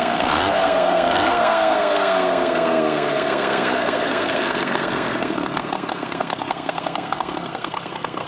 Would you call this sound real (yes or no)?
no